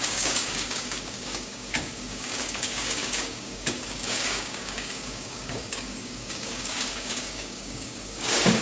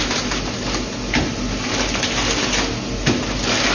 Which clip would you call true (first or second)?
second